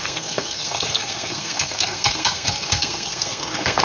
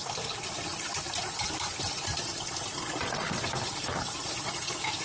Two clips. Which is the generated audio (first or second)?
first